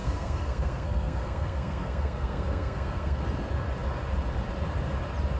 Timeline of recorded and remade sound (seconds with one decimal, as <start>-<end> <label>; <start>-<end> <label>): 0.0-3.2 remade; 3.2-5.4 recorded